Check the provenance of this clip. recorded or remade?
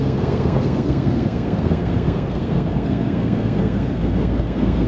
remade